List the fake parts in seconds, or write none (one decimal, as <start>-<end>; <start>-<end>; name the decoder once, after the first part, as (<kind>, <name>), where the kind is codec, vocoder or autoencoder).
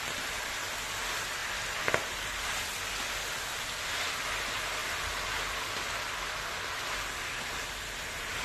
none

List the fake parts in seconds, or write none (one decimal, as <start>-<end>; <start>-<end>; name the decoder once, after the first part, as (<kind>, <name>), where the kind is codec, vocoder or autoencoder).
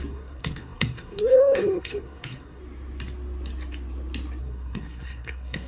0.0-2.6 (codec, SNAC); 4.4-5.7